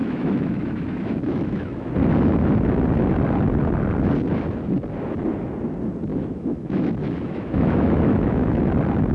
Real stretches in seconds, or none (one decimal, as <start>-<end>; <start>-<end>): 1.9-6.1; 8.6-9.1